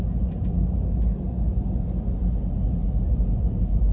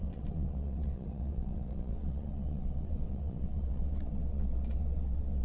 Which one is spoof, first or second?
second